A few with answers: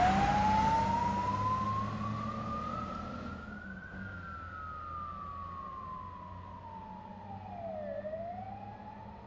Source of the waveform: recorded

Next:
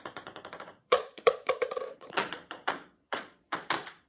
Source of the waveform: remade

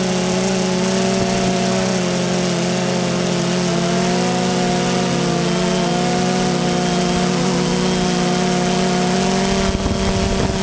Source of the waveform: recorded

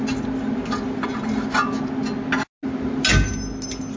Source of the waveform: recorded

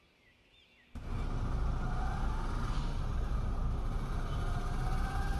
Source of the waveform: recorded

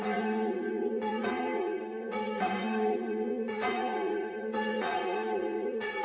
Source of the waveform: remade